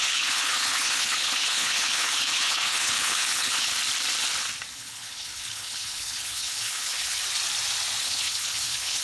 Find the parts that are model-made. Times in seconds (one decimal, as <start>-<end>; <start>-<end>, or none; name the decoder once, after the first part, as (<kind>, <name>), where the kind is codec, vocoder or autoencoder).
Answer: 0.0-3.7 (codec, HILCodec); 4.7-7.2; 8.0-9.0